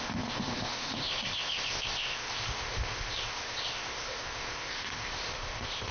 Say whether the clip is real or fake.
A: fake